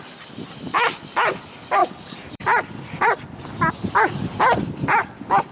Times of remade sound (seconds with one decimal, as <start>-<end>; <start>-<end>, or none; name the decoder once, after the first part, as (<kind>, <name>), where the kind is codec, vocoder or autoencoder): 1.8-3.8 (vocoder, BigVGAN v2)

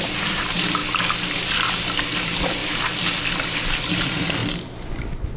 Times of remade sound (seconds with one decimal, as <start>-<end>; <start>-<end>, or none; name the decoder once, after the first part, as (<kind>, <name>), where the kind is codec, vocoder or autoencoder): 0.0-0.8 (vocoder, BigVGAN v2); 2.2-2.6; 3.4-4.4; 4.9-5.4

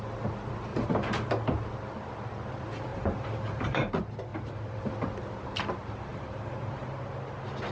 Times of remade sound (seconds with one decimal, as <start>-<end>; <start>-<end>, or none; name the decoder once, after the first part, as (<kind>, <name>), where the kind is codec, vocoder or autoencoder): 0.7-1.3 (vocoder, BigVGAN v2); 2.9-3.9; 4.3-4.8; 6.1-7.1

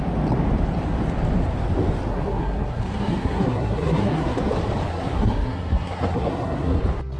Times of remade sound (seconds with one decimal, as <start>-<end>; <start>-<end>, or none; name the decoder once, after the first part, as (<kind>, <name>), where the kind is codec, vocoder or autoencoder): 2.1-4.5 (codec, SNAC); 4.9-6.8

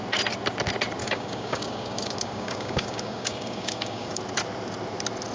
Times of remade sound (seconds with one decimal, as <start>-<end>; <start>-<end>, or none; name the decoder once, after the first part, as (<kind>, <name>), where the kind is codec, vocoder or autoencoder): 1.0-4.2 (codec, DAC)

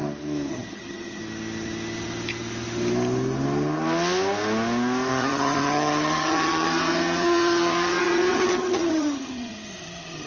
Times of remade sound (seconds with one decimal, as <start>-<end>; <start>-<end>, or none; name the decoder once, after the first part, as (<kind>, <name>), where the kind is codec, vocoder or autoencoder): 0.5-1.2 (vocoder, HiFi-GAN); 5.1-10.3